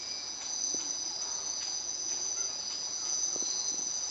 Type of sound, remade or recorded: remade